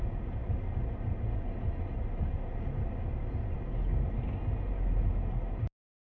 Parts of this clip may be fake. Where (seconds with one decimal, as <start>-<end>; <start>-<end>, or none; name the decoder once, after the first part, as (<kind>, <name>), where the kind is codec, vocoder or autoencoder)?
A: none